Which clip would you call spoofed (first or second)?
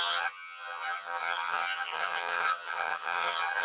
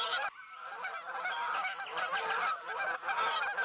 first